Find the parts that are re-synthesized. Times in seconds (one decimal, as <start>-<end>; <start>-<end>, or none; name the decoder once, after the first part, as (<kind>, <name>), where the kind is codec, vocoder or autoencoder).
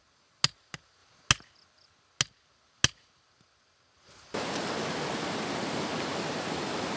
none